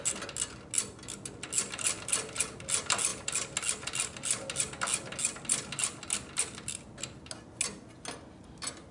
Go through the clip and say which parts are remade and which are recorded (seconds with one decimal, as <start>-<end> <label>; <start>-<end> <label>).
0.0-8.9 recorded